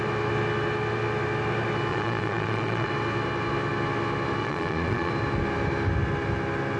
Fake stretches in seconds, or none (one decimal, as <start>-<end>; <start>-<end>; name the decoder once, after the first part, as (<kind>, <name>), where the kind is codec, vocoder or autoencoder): 1.9-2.9 (vocoder, Vocos); 4.4-5.1